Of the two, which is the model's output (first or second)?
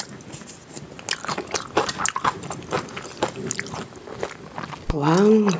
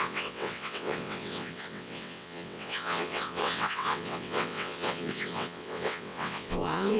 second